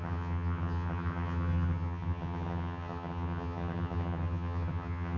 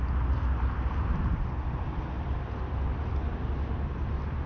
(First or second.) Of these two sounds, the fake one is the first